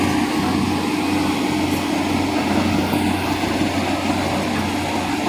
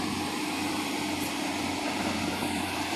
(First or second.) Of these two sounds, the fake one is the second